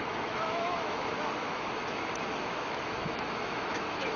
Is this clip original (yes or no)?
no